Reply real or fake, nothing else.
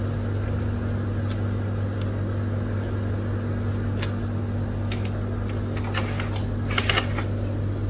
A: real